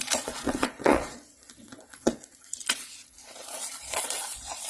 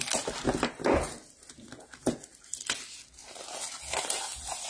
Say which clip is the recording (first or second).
second